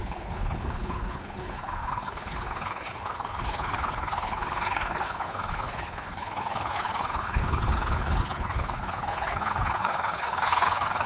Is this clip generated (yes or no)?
yes